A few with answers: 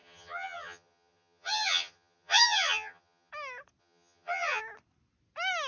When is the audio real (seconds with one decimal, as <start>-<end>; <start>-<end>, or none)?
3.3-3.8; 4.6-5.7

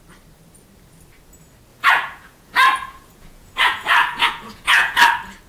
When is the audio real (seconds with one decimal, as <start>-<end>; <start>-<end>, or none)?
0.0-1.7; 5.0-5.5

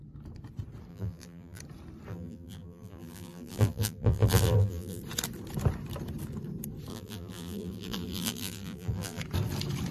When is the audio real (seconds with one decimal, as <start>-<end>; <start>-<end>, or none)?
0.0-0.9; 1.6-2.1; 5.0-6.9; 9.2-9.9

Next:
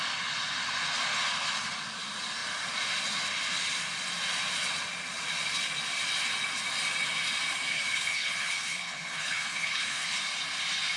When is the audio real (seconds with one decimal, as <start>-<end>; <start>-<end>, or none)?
0.0-7.7; 10.2-11.0

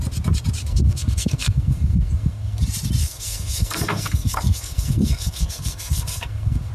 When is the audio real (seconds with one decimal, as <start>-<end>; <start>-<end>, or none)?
0.0-0.6; 2.6-3.0

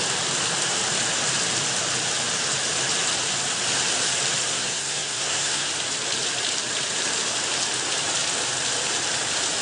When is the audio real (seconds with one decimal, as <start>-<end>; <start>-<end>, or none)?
0.0-4.5; 5.7-9.6

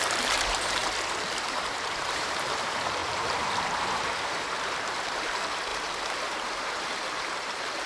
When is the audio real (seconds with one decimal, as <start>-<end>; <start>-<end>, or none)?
0.8-1.5

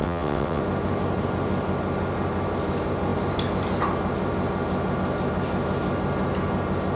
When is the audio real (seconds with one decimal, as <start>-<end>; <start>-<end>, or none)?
0.6-7.0